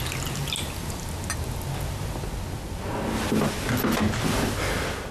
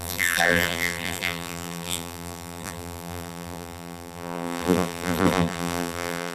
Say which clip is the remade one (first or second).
second